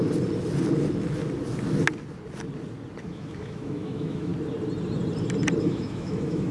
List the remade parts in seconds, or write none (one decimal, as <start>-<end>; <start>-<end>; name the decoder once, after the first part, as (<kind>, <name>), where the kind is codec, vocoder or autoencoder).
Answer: 3.0-4.3 (autoencoder, DAC-VAE); 5.6-6.5